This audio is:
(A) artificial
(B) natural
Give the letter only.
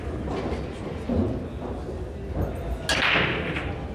B